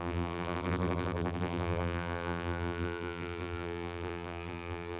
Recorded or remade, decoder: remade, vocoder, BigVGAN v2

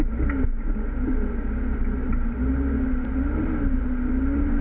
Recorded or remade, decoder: recorded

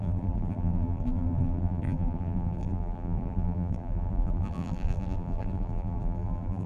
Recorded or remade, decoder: remade, vocoder, BigVGAN v2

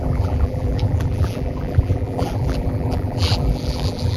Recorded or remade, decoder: remade, vocoder, BigVGAN v2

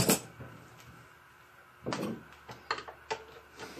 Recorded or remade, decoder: recorded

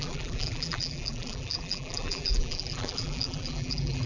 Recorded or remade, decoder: remade, vocoder, BigVGAN v2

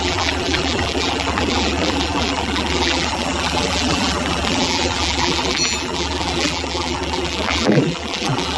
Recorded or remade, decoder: remade, vocoder, BigVGAN v2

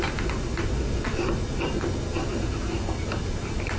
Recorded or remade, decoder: recorded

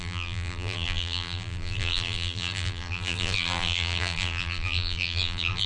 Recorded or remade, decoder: remade, vocoder, BigVGAN v2